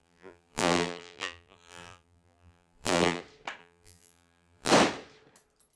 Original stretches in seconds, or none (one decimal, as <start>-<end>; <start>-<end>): 3.2-3.6; 4.7-5.8